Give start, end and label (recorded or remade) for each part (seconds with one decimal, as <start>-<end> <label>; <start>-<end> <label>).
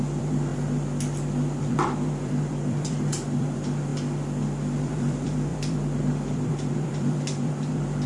0.0-0.5 remade; 0.5-1.6 recorded; 1.6-3.9 remade; 3.9-4.8 recorded; 4.8-8.1 remade